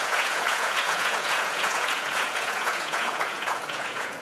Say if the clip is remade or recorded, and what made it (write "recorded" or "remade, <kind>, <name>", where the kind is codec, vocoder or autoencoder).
remade, vocoder, Vocos